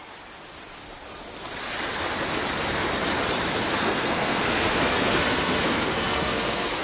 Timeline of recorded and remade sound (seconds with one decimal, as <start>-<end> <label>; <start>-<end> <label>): 0.0-3.8 recorded; 3.8-6.8 remade